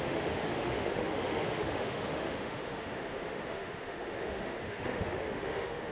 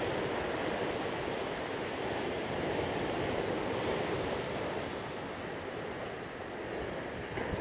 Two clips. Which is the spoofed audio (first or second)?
first